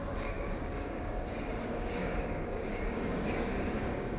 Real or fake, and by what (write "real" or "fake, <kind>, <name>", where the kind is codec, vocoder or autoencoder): fake, codec, DAC